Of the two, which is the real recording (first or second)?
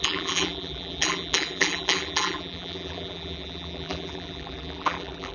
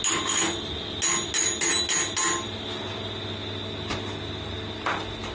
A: second